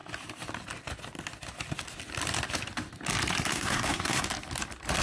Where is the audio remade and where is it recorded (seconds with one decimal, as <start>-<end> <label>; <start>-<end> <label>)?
0.0-3.5 recorded; 3.5-4.2 remade; 4.2-5.0 recorded